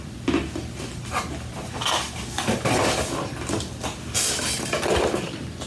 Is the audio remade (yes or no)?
no